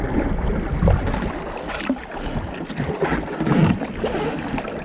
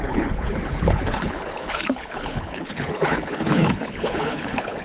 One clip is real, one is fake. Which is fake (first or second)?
second